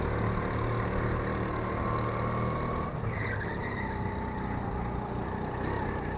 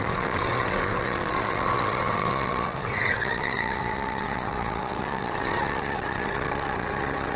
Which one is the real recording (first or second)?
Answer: first